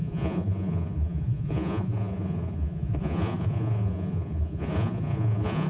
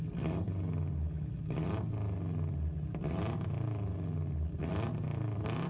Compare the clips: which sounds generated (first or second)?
first